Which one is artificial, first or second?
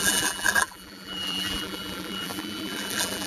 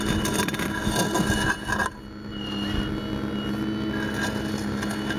first